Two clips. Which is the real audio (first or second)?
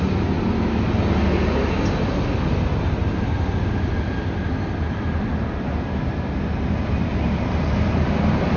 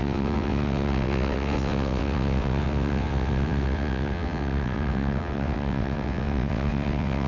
first